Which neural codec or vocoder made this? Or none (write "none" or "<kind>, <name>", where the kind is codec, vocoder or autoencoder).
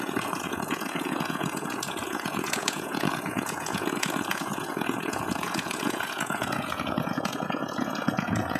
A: vocoder, Vocos